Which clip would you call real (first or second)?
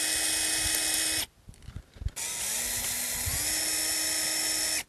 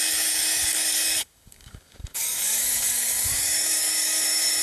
first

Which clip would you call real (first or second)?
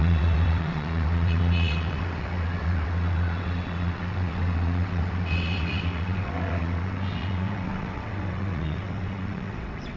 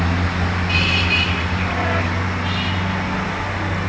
second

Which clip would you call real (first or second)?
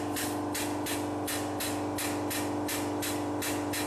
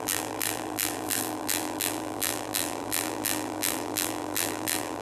first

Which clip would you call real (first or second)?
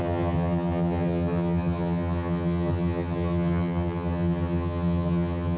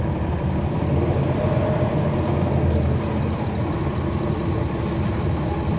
second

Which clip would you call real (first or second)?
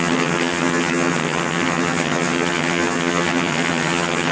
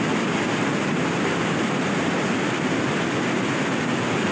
second